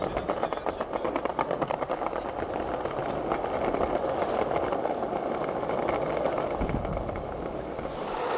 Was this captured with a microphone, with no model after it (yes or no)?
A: yes